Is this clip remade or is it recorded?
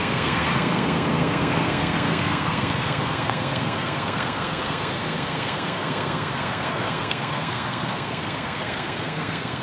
remade